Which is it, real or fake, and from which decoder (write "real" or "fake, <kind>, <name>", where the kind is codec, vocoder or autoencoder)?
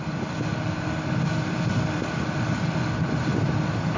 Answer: real